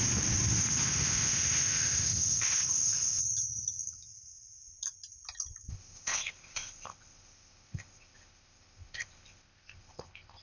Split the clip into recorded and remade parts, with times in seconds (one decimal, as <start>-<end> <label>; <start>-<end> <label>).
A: 0.0-0.6 recorded; 0.6-3.2 remade; 3.2-5.7 recorded; 5.7-10.4 remade